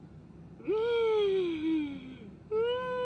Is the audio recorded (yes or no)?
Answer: yes